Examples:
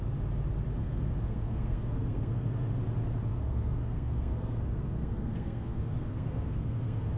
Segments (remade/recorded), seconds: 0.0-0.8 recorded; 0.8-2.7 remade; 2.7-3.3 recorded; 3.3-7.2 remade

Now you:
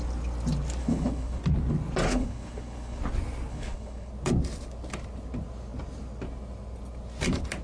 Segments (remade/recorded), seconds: 0.0-0.8 recorded; 0.8-1.4 remade; 1.4-2.1 recorded; 2.1-3.0 remade; 3.0-3.5 recorded; 3.5-4.1 remade; 4.1-7.6 recorded

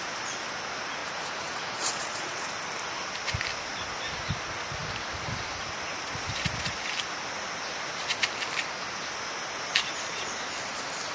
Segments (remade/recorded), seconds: 0.0-1.0 recorded; 1.0-2.5 remade; 2.5-11.1 recorded

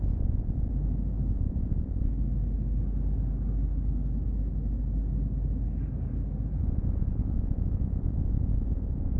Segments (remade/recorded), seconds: 0.0-0.7 remade; 0.7-1.3 recorded; 1.3-2.1 remade; 2.1-6.6 recorded; 6.6-9.2 remade

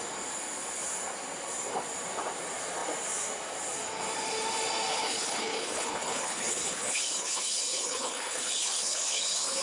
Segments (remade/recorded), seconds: 0.0-4.9 recorded; 4.9-9.6 remade

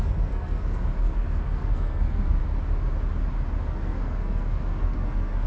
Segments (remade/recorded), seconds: 0.0-2.4 remade; 2.4-3.6 recorded; 3.6-5.5 remade

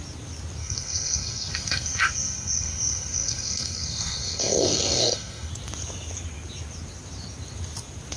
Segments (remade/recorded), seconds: 0.0-0.6 recorded; 0.6-5.5 remade; 5.5-8.2 recorded

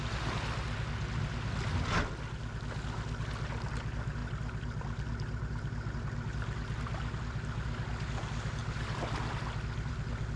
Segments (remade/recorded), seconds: 0.0-10.4 recorded